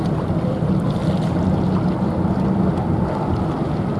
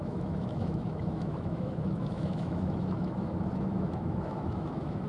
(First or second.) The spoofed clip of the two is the second